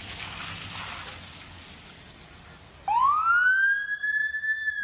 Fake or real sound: real